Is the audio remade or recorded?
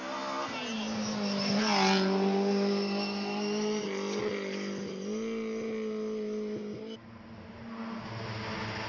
recorded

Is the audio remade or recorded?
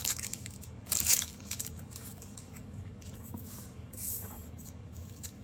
remade